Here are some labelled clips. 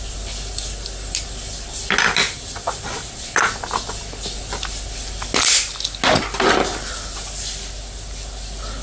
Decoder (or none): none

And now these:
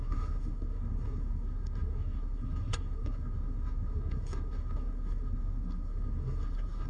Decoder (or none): codec, SNAC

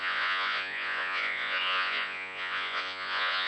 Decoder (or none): vocoder, Vocos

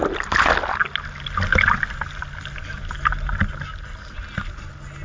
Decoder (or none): none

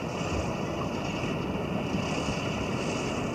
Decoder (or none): none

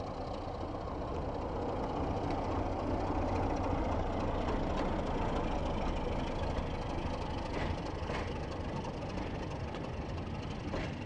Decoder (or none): none